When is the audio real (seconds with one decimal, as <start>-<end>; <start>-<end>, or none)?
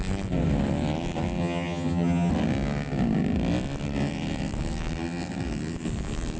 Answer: 0.0-1.4; 2.3-6.4